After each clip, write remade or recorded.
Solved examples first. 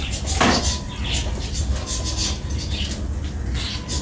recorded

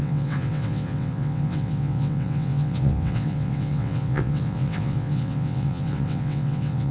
remade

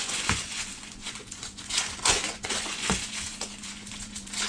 remade